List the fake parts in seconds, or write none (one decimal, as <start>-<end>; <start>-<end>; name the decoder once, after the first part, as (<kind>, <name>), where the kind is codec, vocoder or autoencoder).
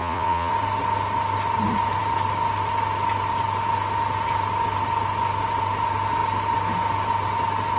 0.0-0.5 (vocoder, Vocos)